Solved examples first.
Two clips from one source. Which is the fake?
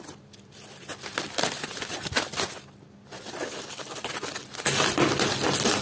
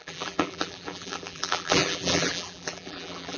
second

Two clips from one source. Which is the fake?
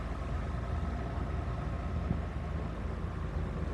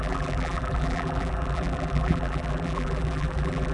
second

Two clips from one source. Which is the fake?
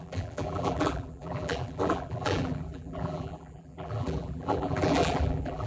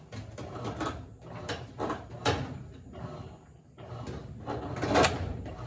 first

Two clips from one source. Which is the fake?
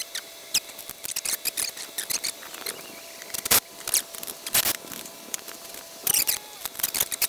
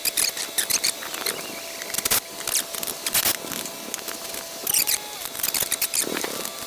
first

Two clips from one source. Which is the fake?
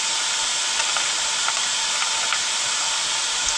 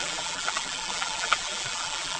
second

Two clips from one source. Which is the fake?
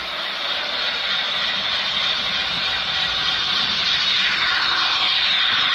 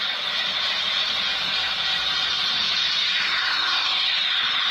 first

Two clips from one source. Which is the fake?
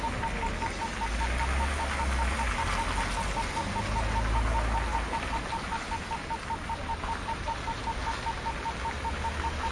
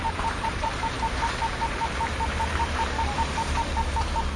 second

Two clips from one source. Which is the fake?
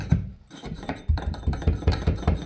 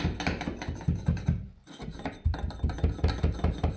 first